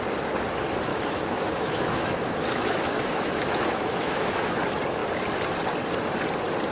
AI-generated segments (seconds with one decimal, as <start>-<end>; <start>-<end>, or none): 0.9-4.5